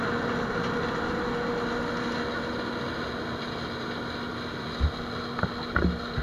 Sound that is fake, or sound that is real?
real